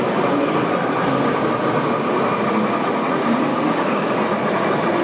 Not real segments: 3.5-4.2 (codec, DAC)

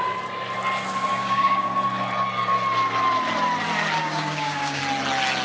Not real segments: 1.1-1.7 (codec, DAC); 4.0-4.8

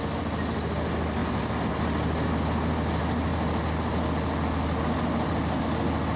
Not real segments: none